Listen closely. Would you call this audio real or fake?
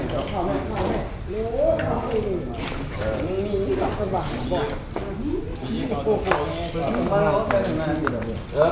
real